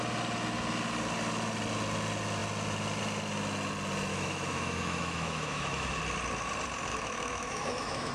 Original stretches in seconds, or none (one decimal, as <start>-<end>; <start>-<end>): 0.0-4.1; 6.0-6.9